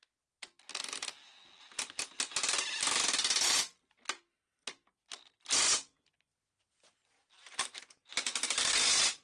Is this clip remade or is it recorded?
recorded